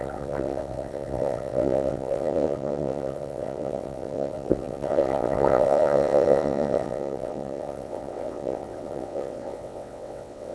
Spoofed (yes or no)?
yes